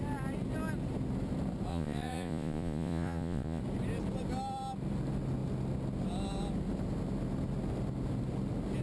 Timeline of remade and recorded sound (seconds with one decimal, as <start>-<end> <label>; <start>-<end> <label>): 0.0-1.7 recorded; 1.7-3.6 remade; 3.6-8.8 recorded